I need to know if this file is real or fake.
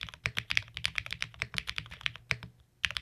real